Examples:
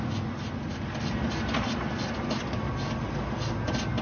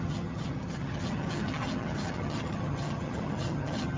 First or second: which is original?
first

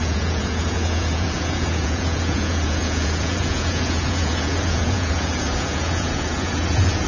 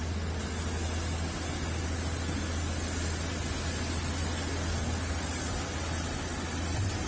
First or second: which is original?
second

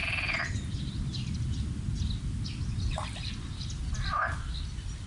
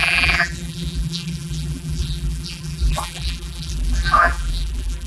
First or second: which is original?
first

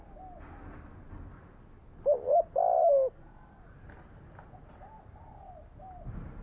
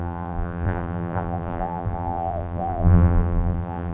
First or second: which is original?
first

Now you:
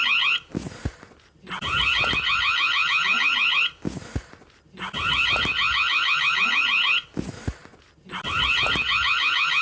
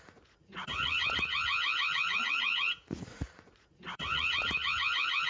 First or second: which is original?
first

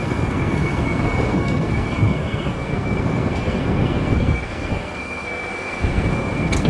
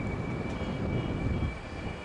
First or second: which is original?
second